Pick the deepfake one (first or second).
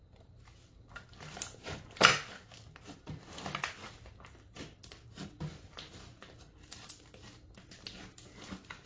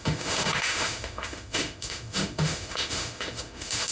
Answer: second